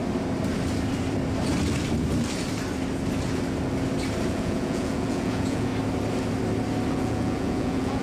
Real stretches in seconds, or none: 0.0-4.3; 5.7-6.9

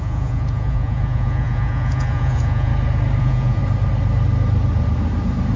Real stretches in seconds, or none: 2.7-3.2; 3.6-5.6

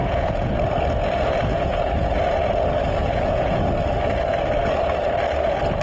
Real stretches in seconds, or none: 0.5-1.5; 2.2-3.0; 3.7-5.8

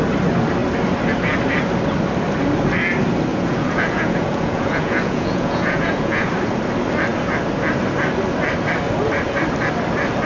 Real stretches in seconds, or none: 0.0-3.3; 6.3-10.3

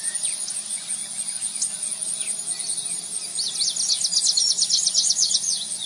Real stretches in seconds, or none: 1.0-4.4

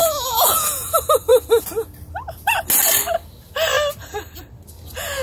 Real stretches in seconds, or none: 0.9-5.2